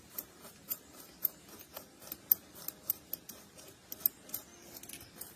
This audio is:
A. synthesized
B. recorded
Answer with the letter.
B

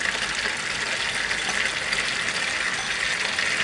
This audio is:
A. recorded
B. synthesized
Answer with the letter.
A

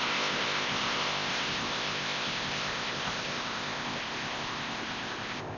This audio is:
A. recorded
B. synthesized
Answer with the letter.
B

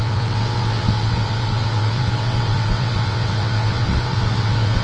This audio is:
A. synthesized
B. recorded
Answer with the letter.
A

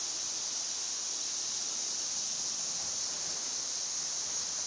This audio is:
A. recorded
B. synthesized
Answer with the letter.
A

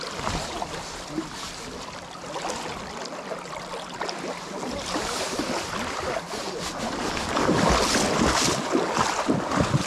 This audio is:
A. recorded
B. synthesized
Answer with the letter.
A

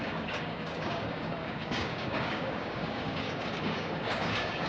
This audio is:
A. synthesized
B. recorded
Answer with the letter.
A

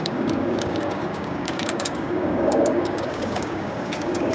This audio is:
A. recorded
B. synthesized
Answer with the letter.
B